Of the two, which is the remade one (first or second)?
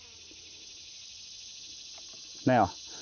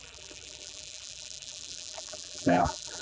second